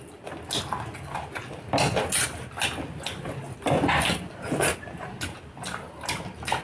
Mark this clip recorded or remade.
recorded